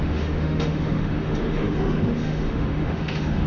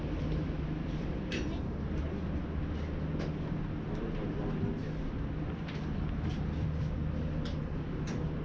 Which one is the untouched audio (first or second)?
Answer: second